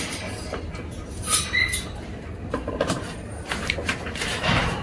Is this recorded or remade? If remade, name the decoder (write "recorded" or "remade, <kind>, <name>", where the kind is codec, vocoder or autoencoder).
remade, vocoder, BigVGAN v2